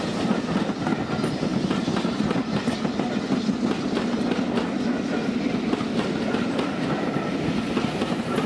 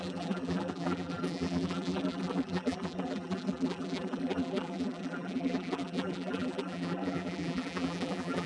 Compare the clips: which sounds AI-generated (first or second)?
second